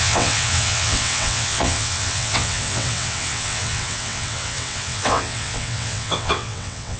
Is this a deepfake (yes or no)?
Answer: yes